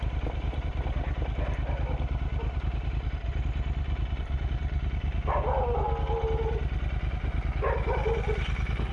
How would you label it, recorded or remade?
recorded